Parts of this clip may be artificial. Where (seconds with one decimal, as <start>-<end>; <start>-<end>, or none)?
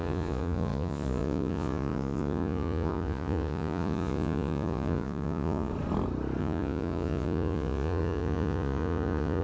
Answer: 0.0-5.7; 6.4-9.4